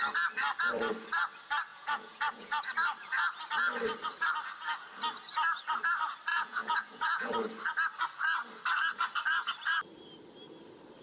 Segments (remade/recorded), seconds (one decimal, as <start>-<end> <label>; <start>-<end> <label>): 0.0-1.7 recorded; 1.7-2.5 remade; 2.5-6.3 recorded; 6.3-7.3 remade; 7.3-11.0 recorded

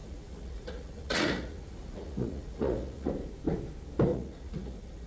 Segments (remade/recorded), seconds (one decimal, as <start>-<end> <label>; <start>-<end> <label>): 0.0-3.1 remade; 3.1-4.1 recorded; 4.1-5.1 remade